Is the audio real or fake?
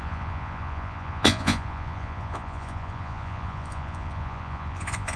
fake